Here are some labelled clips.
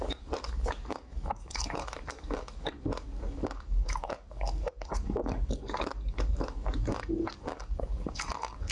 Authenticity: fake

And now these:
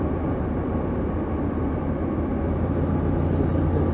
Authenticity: real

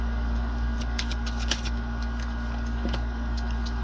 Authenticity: fake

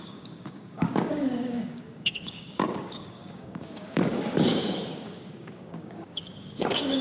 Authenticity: fake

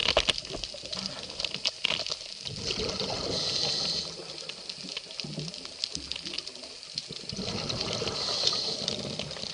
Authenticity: real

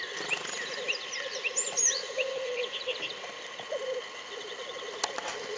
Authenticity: real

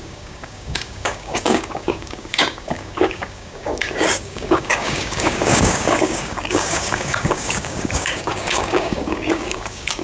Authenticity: fake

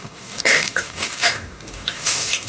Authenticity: fake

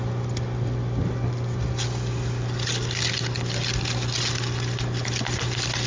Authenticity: real